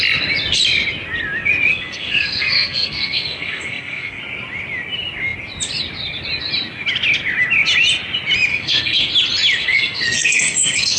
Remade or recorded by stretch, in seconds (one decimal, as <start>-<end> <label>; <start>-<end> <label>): 0.0-1.7 recorded; 1.7-4.2 remade; 4.2-8.5 recorded; 8.5-9.1 remade; 9.1-9.6 recorded; 9.6-11.0 remade